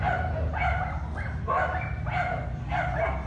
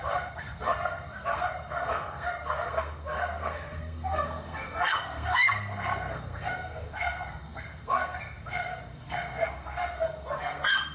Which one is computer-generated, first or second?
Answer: second